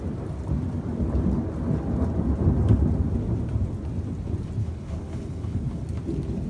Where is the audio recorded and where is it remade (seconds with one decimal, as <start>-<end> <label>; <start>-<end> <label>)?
0.0-4.6 recorded; 4.6-5.8 remade; 5.8-6.5 recorded